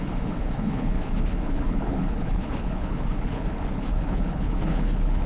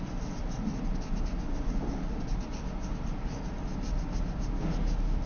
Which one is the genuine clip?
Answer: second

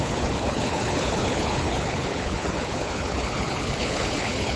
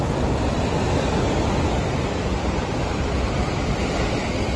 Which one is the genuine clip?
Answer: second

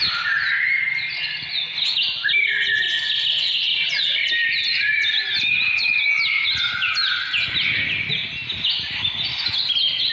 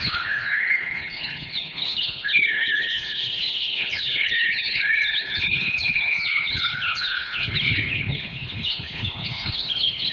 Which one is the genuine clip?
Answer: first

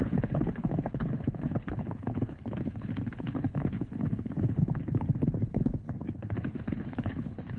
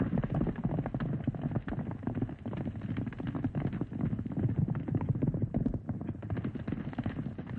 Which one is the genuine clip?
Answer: second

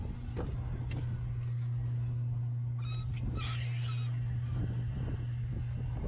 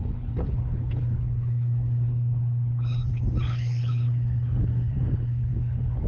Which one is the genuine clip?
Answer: first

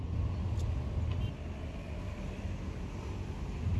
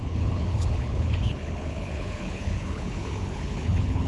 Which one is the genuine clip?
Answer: first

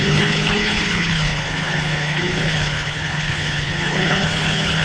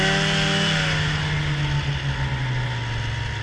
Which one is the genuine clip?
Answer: second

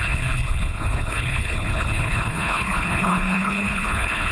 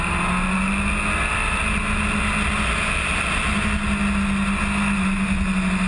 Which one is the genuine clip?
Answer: second